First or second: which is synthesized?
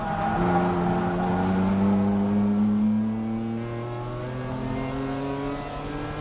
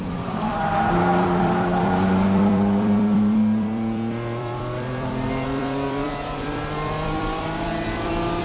second